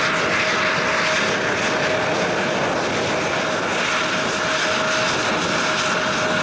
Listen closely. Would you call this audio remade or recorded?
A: recorded